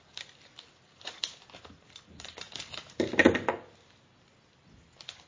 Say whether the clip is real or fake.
real